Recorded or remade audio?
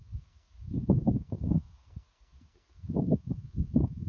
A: remade